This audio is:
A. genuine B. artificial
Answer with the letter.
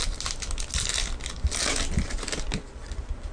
A